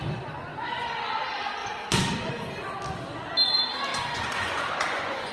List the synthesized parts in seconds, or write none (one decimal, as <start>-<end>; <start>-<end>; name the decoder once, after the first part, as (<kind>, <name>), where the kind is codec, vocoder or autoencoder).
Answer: 0.5-1.1 (vocoder, Vocos); 3.9-5.3